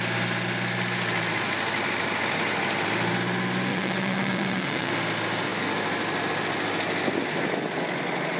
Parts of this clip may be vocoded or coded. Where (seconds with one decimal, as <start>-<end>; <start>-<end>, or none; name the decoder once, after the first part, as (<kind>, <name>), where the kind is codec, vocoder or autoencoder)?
3.7-4.9 (vocoder, WaveNeXt)

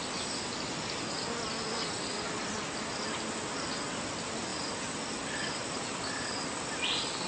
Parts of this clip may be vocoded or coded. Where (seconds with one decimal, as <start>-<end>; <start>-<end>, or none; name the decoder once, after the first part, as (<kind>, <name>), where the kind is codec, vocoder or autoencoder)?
none